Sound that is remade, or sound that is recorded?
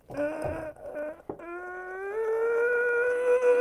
recorded